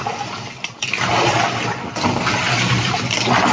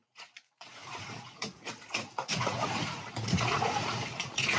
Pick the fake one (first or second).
second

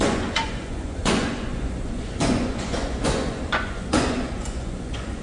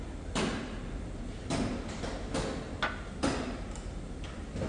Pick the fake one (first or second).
first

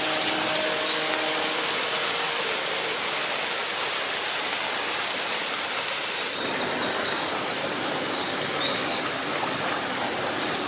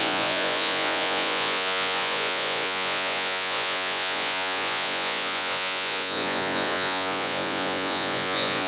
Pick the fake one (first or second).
second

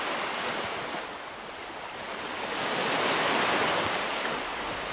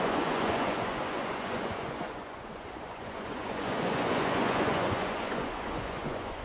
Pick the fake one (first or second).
second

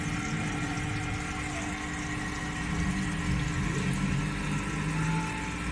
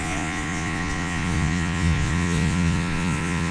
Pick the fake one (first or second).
second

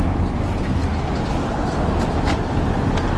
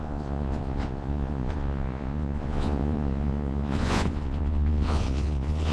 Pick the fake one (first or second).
second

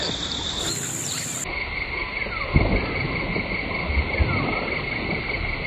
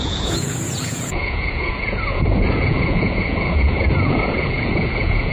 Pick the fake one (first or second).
second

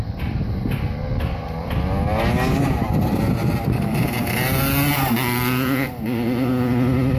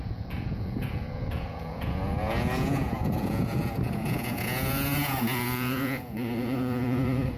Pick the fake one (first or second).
second